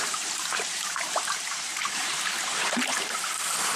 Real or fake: fake